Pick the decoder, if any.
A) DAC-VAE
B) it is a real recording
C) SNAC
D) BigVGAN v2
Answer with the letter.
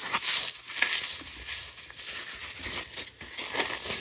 B